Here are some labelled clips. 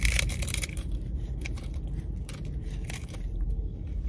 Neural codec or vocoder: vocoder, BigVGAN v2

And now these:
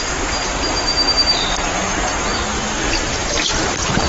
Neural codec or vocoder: none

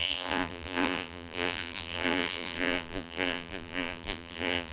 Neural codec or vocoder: vocoder, BigVGAN v2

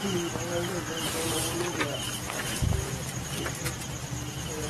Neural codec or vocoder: none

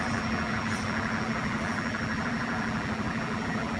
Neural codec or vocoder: vocoder, BigVGAN v2